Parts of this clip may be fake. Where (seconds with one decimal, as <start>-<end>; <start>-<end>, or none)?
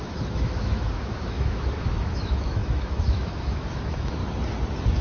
0.0-4.2